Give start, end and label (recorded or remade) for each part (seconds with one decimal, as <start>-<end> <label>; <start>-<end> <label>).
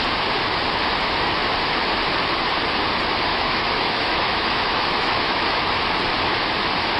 0.0-3.3 recorded; 3.3-5.7 remade; 5.7-7.0 recorded